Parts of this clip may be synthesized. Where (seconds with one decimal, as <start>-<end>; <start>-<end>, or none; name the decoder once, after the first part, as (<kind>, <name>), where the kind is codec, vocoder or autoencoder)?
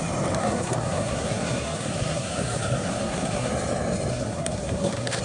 0.4-3.5 (codec, SNAC); 4.1-5.2